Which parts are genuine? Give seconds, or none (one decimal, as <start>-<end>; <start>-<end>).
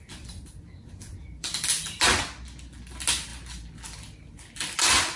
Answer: 0.0-5.2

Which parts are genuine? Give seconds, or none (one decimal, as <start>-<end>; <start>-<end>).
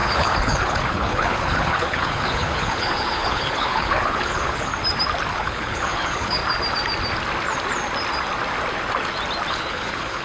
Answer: 4.7-5.3; 6.4-9.5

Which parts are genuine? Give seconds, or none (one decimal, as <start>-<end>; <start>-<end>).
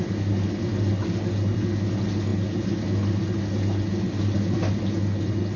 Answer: 0.0-5.6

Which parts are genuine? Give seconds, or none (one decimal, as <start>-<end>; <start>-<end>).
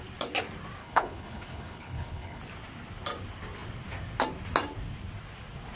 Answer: 0.0-0.8; 2.4-5.8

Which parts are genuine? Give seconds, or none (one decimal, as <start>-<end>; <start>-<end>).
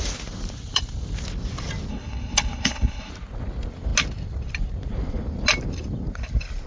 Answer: 0.0-1.9; 3.1-6.7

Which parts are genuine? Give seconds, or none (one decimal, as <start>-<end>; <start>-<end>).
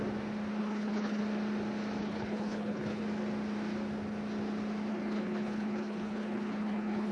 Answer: 0.0-0.6; 1.2-2.0; 3.0-4.9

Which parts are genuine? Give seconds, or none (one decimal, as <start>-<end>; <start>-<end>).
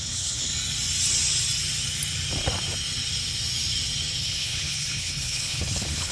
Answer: 0.5-4.2